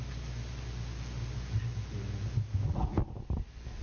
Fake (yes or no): no